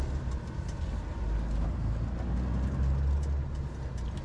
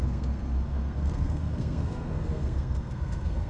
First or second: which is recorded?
first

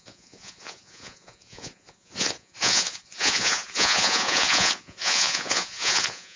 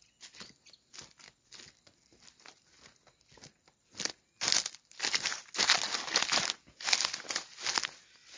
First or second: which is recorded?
second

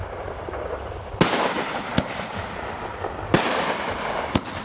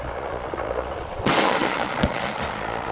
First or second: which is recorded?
first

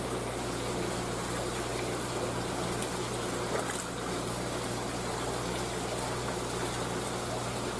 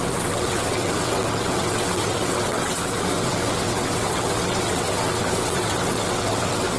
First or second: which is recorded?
first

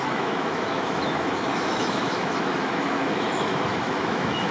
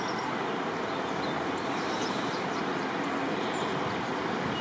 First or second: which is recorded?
second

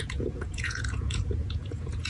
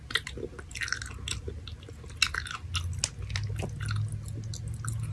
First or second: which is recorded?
second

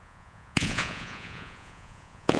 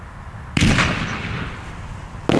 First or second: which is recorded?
second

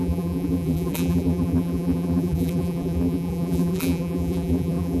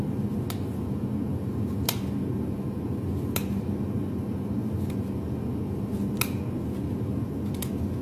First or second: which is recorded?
second